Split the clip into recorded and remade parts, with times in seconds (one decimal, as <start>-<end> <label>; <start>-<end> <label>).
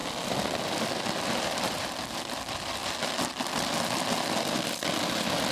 0.0-2.2 remade; 2.2-5.5 recorded